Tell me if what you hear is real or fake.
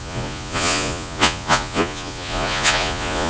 fake